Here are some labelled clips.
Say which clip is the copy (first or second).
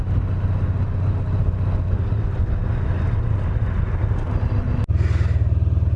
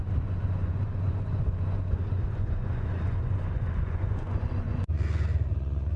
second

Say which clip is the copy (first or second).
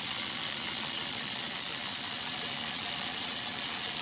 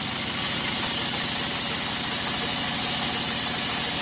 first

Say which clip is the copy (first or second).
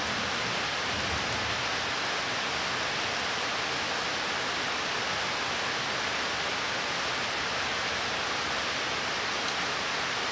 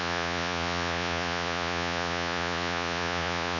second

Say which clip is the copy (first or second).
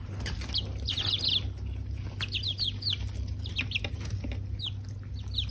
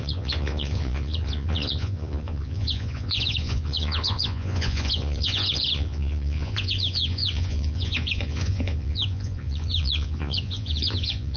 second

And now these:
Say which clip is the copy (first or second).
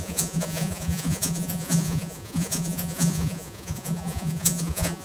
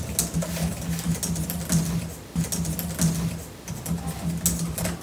first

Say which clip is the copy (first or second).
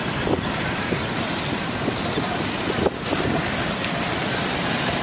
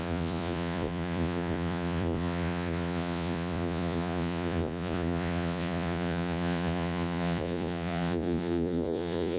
second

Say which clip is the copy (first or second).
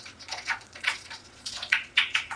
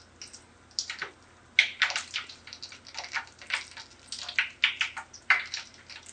first